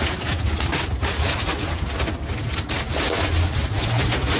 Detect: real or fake real